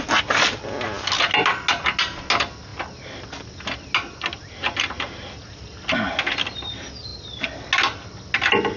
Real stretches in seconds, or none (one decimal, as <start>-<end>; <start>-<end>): 0.0-8.8